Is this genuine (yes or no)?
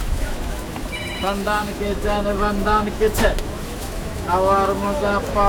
no